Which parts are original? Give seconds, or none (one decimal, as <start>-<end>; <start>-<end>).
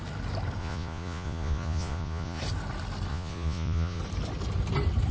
0.0-0.6; 2.4-3.1; 4.0-5.1